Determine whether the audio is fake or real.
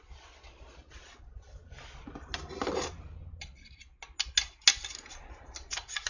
real